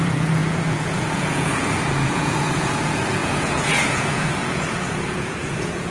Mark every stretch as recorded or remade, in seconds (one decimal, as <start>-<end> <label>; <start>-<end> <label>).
0.0-5.9 remade